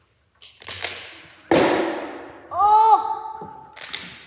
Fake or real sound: real